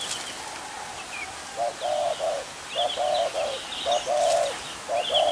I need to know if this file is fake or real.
real